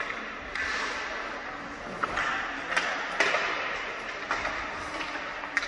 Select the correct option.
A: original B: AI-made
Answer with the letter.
A